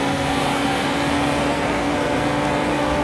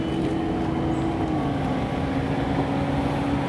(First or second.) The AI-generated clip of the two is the first